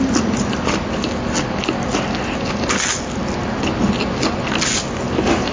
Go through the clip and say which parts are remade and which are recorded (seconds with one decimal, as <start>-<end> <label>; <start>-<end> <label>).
0.0-5.5 recorded